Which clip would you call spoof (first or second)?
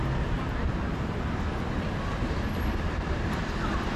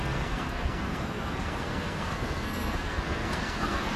second